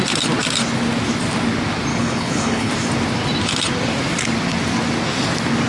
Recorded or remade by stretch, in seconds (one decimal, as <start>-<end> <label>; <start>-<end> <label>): 0.0-1.9 recorded; 1.9-2.7 remade; 2.7-5.7 recorded

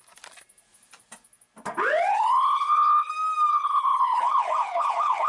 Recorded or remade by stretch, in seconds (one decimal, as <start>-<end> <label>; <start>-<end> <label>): 0.0-2.1 recorded; 2.1-3.1 remade; 3.1-3.5 recorded; 3.5-5.3 remade

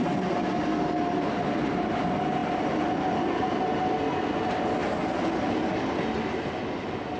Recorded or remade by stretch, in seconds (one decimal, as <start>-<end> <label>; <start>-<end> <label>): 0.0-7.2 recorded

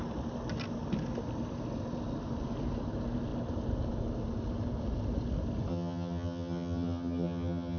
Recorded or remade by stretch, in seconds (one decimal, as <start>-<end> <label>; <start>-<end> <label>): 0.0-5.7 recorded; 5.7-7.8 remade

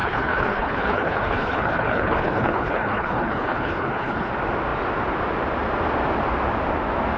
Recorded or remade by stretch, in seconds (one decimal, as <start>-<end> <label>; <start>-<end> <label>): 0.0-4.3 remade; 4.3-7.2 recorded

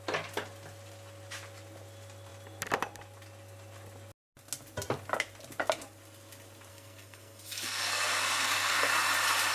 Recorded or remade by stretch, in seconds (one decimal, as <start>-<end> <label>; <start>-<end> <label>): 0.0-6.7 recorded; 6.7-8.9 remade; 8.9-9.5 recorded